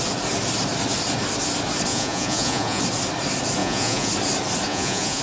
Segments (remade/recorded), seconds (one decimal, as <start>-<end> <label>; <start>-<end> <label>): 0.0-1.9 recorded; 1.9-2.8 remade; 2.8-3.6 recorded; 3.6-4.1 remade; 4.1-4.7 recorded; 4.7-5.2 remade